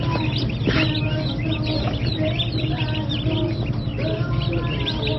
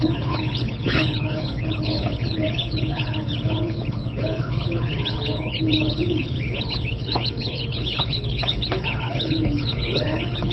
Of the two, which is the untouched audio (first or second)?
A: first